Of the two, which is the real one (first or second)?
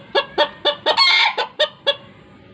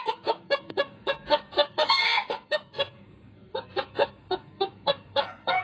first